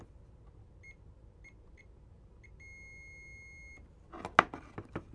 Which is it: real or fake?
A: real